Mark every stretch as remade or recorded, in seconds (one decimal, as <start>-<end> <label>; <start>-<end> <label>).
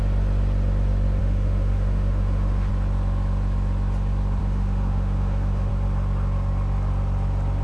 0.0-1.2 recorded; 1.2-2.7 remade; 2.7-4.4 recorded; 4.4-5.7 remade; 5.7-7.6 recorded